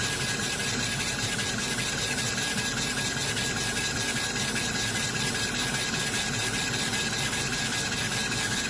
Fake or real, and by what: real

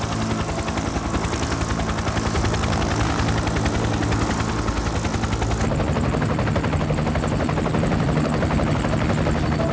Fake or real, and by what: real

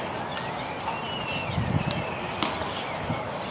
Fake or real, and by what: real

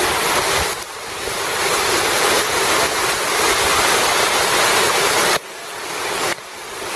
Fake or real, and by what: fake, vocoder, BigVGAN v2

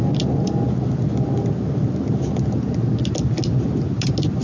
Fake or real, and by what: real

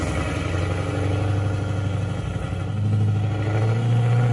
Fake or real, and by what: real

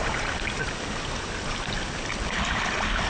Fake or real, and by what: real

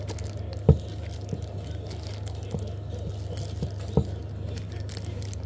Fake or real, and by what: real